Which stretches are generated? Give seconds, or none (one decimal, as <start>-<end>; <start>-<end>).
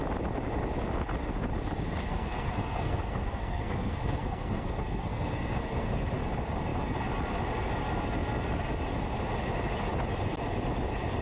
2.1-6.1